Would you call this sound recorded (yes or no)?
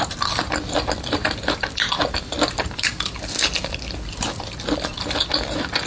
yes